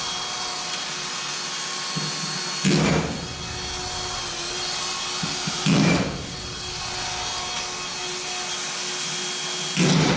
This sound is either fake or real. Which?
real